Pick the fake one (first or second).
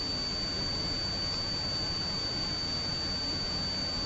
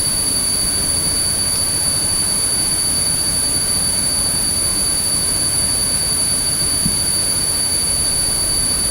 second